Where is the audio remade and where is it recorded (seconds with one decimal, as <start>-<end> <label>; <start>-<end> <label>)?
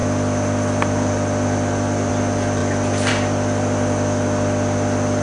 0.0-5.2 recorded